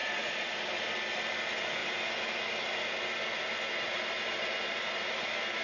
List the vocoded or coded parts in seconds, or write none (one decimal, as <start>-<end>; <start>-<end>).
0.0-0.5